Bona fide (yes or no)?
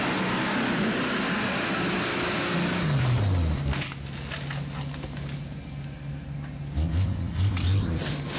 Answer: yes